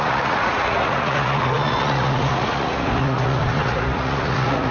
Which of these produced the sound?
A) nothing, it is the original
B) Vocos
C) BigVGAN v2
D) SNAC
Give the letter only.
B